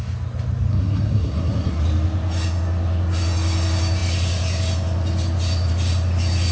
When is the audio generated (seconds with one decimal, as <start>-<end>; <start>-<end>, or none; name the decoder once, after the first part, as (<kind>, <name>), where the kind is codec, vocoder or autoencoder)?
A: 0.7-1.8 (codec, SNAC)